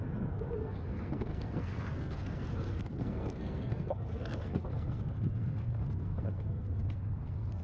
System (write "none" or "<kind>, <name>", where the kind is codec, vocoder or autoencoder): codec, SNAC